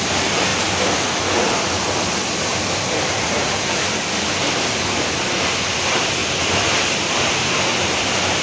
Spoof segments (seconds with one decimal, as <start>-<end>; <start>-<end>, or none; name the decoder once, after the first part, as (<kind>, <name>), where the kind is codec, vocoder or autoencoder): 0.0-0.5 (vocoder, BigVGAN v2); 5.5-6.2; 8.0-8.4